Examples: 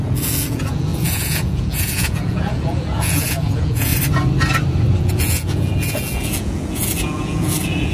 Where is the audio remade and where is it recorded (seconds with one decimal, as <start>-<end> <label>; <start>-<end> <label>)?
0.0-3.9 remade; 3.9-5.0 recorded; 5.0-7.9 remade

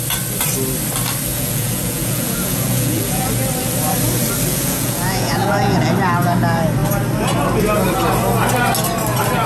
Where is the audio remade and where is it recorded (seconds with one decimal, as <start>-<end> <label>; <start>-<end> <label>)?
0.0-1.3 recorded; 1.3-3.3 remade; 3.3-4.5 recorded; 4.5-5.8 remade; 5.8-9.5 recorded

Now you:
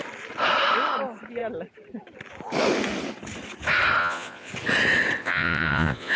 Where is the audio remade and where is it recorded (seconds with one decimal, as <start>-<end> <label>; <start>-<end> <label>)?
0.0-4.0 recorded; 4.0-4.5 remade; 4.5-5.2 recorded; 5.2-6.2 remade

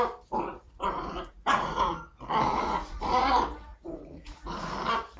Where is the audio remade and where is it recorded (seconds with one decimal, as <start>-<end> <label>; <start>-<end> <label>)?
0.0-0.5 recorded; 0.5-1.9 remade; 1.9-2.5 recorded; 2.5-3.2 remade; 3.2-3.7 recorded; 3.7-4.7 remade; 4.7-5.2 recorded

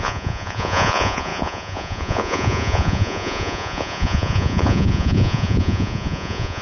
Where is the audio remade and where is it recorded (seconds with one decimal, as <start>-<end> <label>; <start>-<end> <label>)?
0.0-6.6 remade